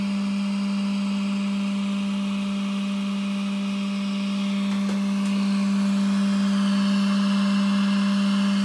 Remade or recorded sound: recorded